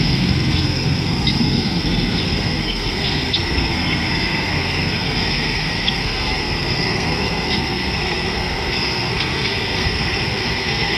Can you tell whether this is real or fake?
fake